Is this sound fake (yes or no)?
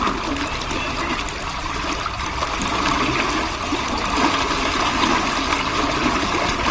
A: no